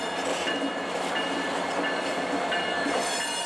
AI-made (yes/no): no